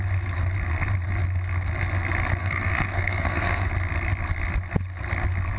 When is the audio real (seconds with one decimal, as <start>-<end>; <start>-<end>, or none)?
0.0-2.4; 3.7-5.6